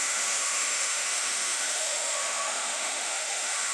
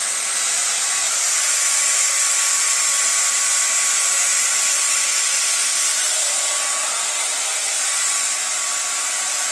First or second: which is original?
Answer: second